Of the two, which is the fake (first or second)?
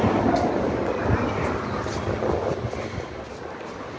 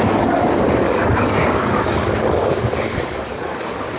second